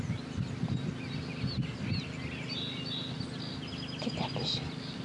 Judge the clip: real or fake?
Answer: real